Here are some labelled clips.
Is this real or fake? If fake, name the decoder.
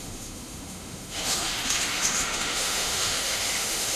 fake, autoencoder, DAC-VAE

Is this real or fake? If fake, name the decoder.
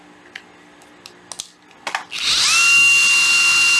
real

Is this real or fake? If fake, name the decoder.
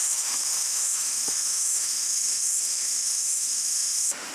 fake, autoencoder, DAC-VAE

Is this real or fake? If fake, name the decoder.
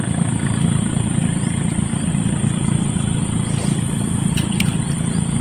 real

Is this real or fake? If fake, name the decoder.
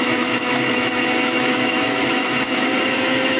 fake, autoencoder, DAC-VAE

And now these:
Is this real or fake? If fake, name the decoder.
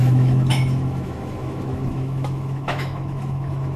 fake, autoencoder, DAC-VAE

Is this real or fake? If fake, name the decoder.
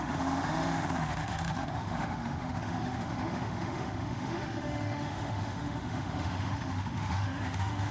fake, autoencoder, DAC-VAE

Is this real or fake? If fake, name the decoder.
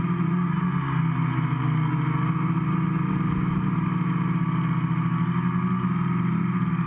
real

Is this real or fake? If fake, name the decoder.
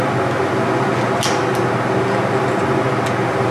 real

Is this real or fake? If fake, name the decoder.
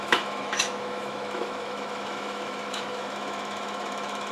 fake, autoencoder, DAC-VAE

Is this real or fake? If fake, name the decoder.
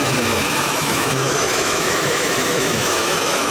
fake, autoencoder, DAC-VAE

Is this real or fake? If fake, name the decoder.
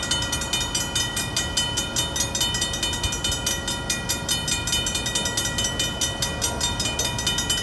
real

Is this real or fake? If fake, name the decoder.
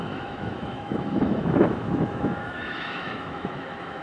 fake, autoencoder, DAC-VAE